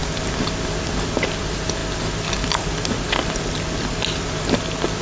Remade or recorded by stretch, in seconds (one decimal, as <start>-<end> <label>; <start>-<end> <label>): 0.0-5.0 recorded